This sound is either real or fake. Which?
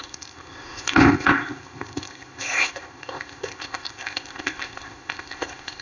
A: fake